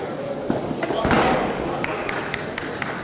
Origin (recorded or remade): remade